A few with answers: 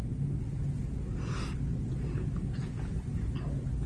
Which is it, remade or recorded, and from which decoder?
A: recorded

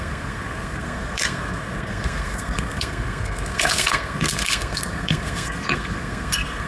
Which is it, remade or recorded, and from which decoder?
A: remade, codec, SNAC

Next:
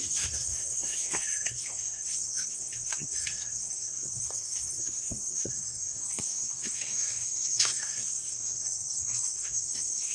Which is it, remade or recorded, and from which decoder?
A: remade, codec, SNAC